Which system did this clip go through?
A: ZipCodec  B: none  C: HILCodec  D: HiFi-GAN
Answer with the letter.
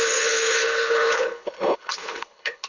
C